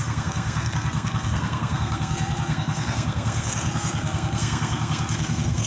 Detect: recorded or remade remade